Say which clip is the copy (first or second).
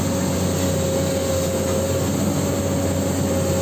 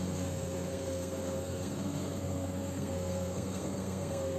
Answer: second